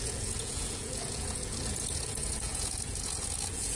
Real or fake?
fake